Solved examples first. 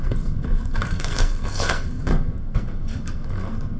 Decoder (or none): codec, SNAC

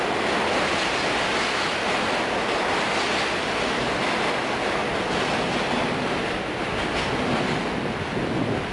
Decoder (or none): none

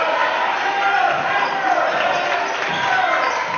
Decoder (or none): none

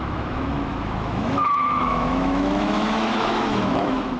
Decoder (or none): autoencoder, DAC-VAE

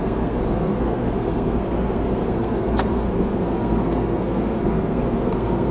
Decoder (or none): codec, SNAC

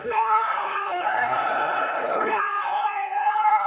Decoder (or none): codec, SNAC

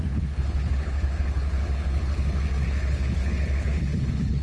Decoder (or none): codec, HILCodec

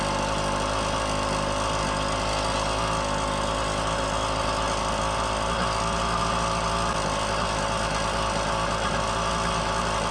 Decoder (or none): none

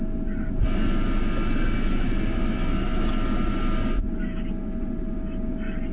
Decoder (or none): none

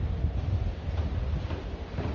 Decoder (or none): none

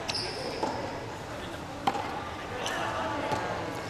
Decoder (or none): none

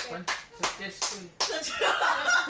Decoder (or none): none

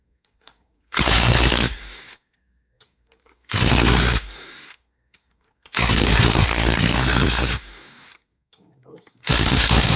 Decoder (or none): codec, SNAC